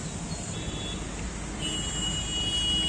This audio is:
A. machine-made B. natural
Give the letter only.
B